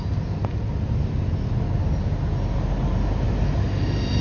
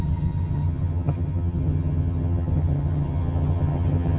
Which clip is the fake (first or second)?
second